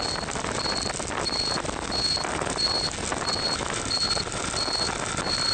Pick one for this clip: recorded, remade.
recorded